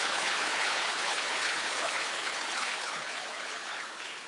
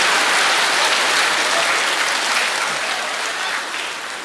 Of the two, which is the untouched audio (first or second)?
second